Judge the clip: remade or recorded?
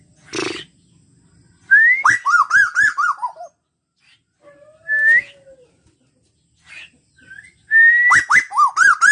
recorded